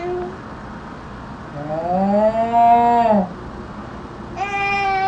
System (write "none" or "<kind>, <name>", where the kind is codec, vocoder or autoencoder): none